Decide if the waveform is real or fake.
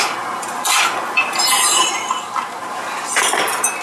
real